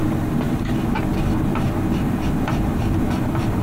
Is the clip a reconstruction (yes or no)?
no